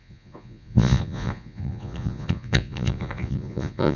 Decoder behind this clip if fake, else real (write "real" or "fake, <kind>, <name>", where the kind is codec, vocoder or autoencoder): fake, vocoder, Vocos